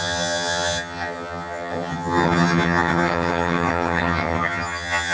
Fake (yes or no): yes